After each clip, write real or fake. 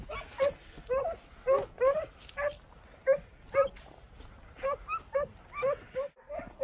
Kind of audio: real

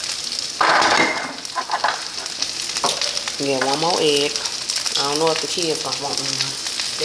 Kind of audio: real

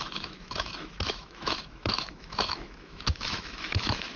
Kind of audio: fake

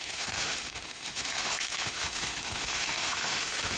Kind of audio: fake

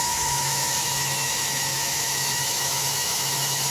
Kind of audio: fake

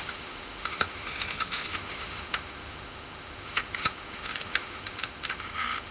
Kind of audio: fake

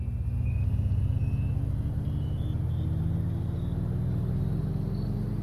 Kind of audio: real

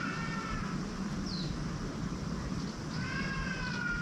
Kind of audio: real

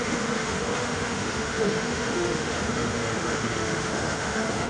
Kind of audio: fake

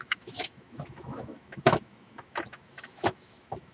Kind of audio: fake